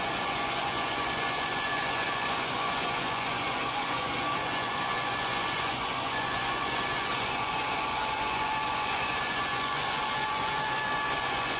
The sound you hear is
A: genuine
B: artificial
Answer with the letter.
B